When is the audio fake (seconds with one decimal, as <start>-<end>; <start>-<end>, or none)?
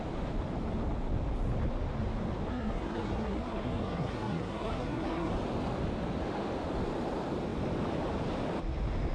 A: 2.5-5.3